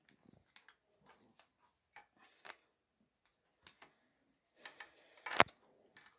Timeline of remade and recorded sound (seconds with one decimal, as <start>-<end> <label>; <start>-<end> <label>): 0.0-6.2 recorded